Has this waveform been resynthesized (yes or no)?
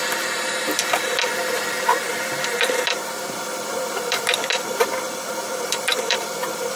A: yes